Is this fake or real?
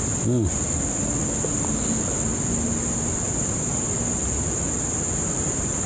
real